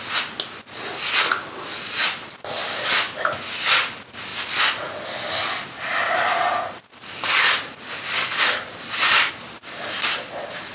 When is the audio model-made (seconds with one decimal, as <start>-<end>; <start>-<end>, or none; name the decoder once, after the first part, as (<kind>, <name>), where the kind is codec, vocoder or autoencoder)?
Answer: none